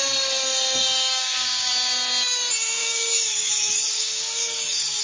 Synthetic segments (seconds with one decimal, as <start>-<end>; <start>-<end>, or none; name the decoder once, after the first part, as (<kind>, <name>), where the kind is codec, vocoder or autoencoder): 0.8-1.7 (codec, DAC); 2.8-5.0